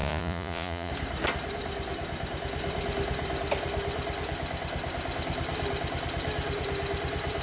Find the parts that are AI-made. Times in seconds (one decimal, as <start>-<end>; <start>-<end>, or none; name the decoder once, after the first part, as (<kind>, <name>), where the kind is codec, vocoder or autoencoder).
0.0-0.9 (vocoder, Vocos)